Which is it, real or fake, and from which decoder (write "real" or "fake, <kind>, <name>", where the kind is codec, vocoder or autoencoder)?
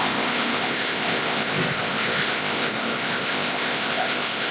fake, codec, ZipCodec